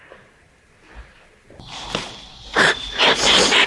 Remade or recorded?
recorded